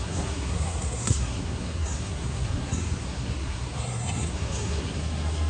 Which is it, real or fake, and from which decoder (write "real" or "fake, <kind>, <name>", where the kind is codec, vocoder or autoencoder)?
fake, codec, SNAC